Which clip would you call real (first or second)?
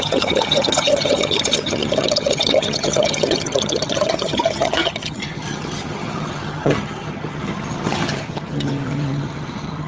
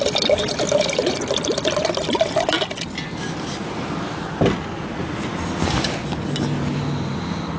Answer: second